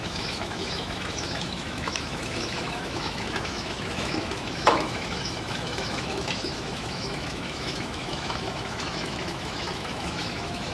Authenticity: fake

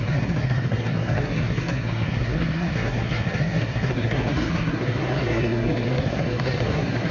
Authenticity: fake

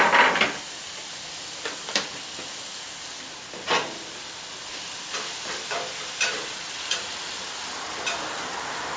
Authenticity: real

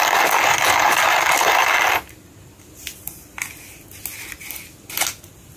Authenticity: real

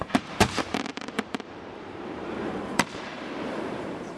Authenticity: fake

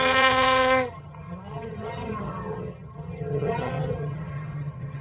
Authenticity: fake